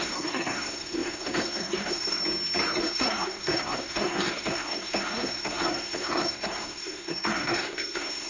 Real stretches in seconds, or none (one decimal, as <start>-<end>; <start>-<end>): 2.2-2.8